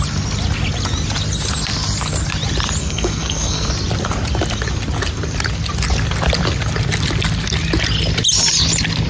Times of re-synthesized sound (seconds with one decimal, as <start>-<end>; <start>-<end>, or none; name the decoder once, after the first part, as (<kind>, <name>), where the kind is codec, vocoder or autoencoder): 2.8-3.7 (codec, SNAC)